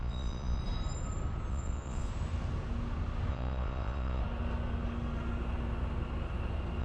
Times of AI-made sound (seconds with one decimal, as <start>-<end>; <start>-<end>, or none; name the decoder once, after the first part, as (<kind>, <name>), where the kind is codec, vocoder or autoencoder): 0.0-0.6 (vocoder, Vocos); 1.5-2.1; 3.3-4.2